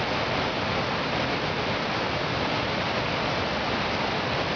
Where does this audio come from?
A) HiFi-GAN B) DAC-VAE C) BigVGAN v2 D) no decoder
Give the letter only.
D